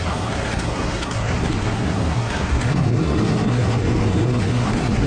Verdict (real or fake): fake